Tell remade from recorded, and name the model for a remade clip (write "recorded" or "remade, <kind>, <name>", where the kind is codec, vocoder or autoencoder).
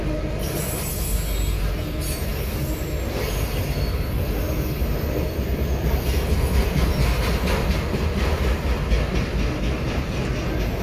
recorded